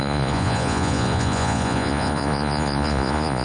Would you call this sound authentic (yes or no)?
no